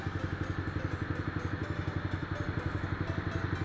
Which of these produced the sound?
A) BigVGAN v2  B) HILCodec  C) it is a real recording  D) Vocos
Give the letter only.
C